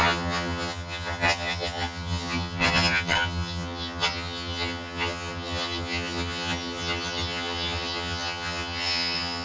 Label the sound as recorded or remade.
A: remade